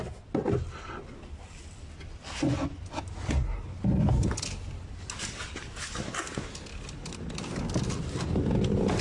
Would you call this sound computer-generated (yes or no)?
no